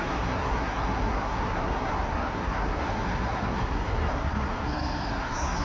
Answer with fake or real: fake